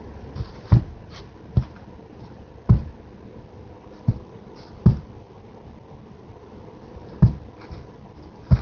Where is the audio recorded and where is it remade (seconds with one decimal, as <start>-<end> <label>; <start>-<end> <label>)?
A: 0.0-8.6 recorded